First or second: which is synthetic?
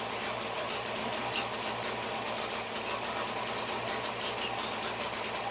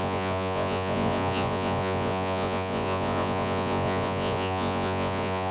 second